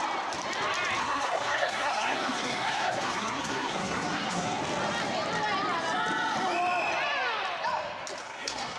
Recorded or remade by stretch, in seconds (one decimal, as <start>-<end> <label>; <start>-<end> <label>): 0.0-1.0 recorded; 1.0-4.6 remade; 4.6-8.2 recorded; 8.2-8.8 remade